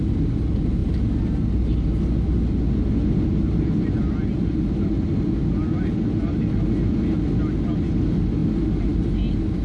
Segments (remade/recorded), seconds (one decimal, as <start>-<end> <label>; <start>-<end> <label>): 0.0-9.6 recorded